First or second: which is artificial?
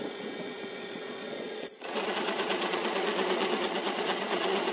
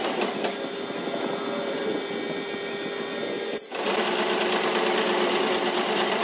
first